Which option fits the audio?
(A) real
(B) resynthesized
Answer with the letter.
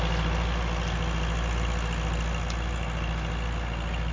A